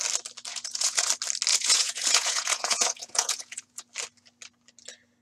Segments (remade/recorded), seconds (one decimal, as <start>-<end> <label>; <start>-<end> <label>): 0.0-0.5 recorded; 0.5-1.1 remade; 1.1-1.5 recorded; 1.5-3.8 remade; 3.8-5.2 recorded